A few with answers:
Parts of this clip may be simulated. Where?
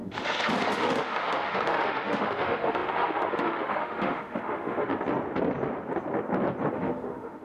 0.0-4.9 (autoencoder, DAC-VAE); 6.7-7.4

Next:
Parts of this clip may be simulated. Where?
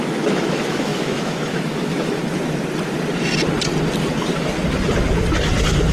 0.0-2.2 (autoencoder, DAC-VAE)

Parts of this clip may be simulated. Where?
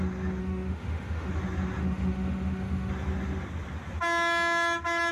0.4-1.3 (autoencoder, DAC-VAE); 1.8-2.9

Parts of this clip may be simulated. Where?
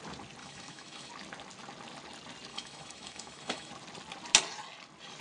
0.4-1.1 (autoencoder, DAC-VAE); 2.5-3.7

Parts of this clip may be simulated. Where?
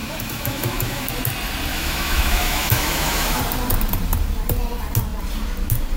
0.0-1.1 (autoencoder, DAC-VAE); 1.7-3.4